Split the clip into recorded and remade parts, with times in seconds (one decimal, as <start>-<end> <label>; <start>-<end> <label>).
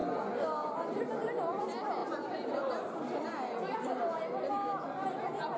0.0-1.6 remade; 1.6-2.0 recorded; 2.0-4.5 remade; 4.5-5.6 recorded